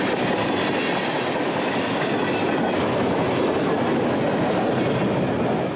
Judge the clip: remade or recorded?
recorded